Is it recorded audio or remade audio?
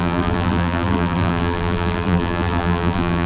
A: remade